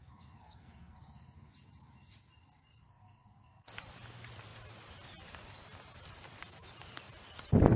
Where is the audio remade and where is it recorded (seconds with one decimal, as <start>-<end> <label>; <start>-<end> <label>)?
0.0-1.5 remade; 1.5-2.8 recorded; 2.8-3.7 remade; 3.7-7.8 recorded